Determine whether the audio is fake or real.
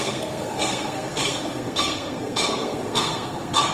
fake